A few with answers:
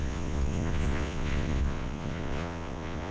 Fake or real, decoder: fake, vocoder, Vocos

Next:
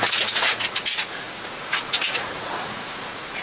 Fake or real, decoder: fake, vocoder, Vocos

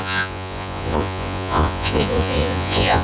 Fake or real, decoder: fake, vocoder, Vocos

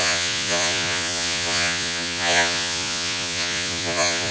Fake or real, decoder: fake, vocoder, Vocos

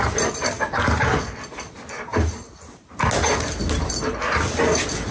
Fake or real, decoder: real